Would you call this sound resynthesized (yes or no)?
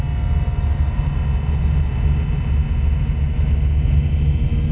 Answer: no